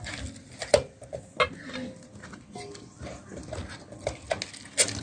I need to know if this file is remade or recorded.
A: recorded